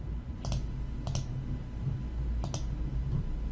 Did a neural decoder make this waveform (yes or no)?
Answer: no